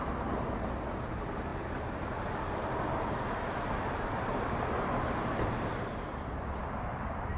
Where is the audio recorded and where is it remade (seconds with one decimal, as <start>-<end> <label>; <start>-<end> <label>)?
0.0-7.4 remade